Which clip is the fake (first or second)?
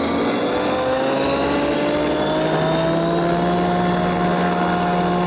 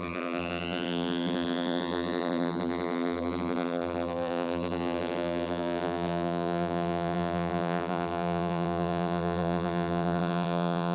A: second